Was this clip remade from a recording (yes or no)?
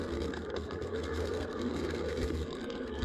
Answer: yes